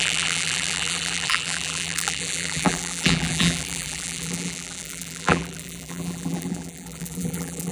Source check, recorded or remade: remade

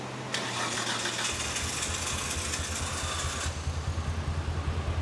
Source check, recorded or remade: recorded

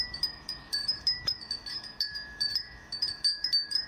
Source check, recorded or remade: remade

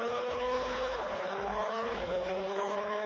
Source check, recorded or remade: remade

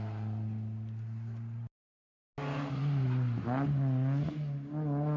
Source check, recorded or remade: recorded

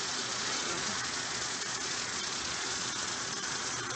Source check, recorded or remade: remade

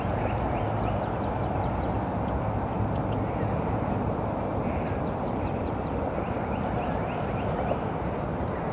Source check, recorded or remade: recorded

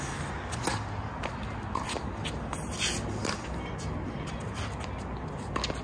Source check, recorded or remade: recorded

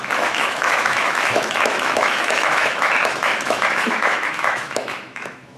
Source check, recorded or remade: remade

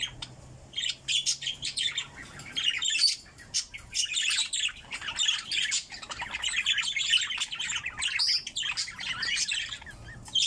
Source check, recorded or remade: recorded